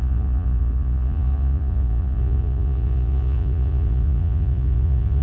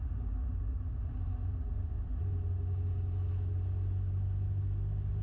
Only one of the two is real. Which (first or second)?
second